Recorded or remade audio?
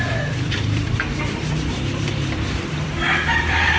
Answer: remade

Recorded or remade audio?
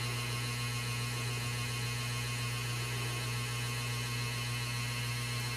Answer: recorded